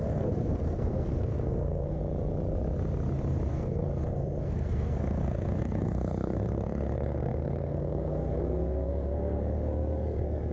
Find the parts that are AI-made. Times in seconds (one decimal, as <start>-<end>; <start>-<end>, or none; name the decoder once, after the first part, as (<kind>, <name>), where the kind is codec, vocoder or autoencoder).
0.0-2.0 (codec, SNAC); 3.5-10.5